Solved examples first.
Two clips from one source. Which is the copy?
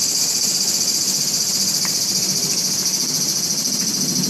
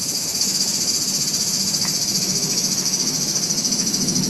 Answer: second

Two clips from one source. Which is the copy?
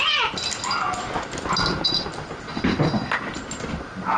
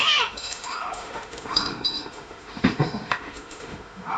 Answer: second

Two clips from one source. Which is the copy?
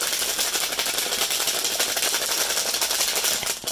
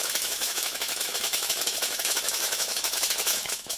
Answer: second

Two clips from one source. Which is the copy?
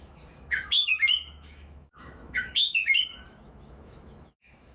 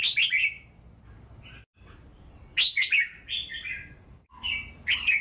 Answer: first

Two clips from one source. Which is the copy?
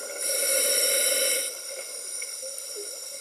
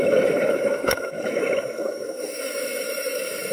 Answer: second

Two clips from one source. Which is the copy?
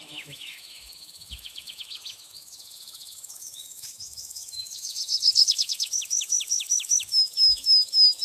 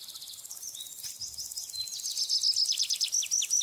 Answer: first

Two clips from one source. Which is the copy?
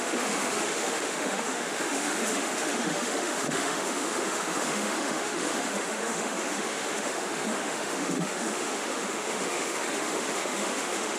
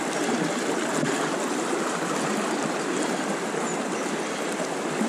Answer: first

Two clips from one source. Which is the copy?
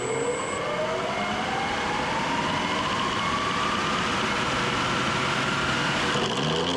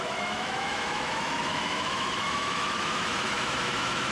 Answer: second